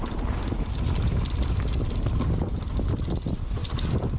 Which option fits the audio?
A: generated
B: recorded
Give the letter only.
B